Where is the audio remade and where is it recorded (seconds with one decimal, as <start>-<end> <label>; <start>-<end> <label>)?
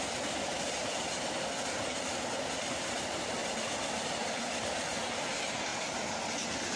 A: 0.0-3.4 recorded; 3.4-5.3 remade; 5.3-5.7 recorded; 5.7-6.3 remade; 6.3-6.8 recorded